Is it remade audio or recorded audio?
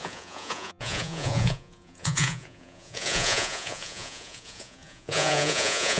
remade